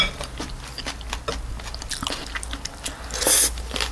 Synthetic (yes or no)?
no